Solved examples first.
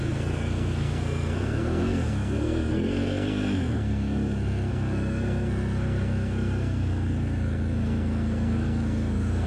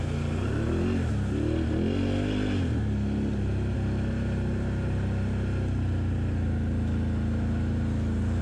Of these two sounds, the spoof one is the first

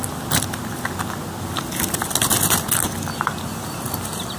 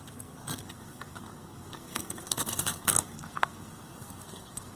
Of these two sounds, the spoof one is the second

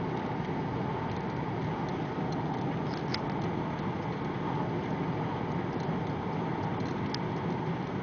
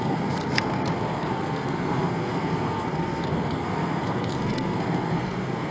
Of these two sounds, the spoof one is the second